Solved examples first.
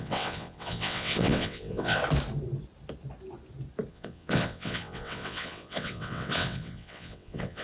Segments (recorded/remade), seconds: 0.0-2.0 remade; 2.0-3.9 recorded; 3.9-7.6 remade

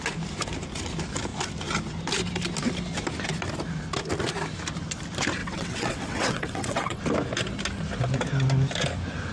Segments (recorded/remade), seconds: 0.0-5.4 recorded; 5.4-7.0 remade; 7.0-9.3 recorded